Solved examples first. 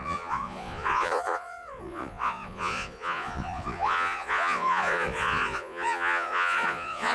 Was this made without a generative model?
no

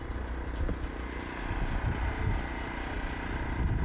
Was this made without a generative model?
yes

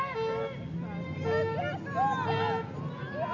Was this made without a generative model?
yes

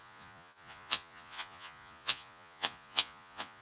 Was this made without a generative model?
no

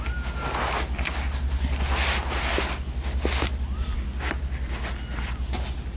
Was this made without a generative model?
yes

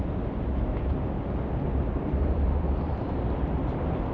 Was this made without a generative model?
yes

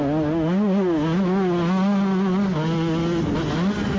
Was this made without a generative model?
yes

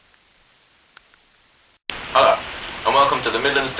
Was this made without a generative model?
yes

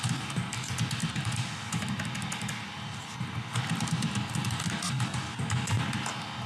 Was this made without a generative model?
yes